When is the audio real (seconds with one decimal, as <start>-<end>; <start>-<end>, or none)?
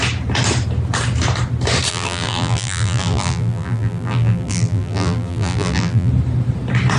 0.0-1.9; 6.1-7.0